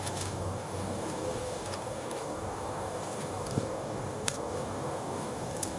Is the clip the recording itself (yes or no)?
no